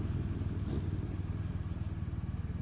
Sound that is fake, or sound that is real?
real